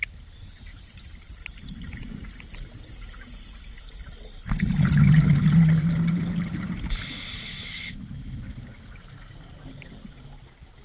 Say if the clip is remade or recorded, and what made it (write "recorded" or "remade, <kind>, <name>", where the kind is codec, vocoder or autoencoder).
recorded